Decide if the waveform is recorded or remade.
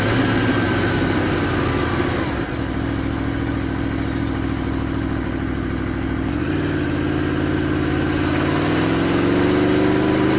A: recorded